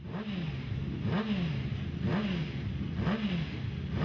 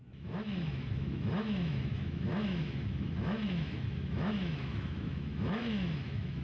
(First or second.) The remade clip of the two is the second